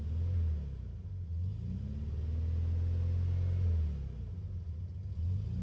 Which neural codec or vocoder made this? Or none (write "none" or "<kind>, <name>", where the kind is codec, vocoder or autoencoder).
none